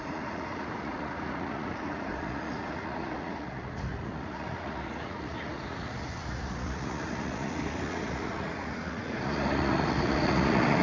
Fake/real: fake